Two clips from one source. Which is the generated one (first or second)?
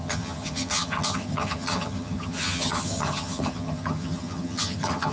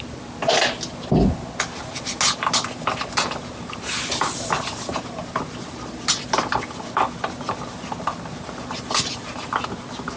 first